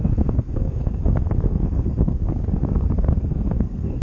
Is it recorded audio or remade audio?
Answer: remade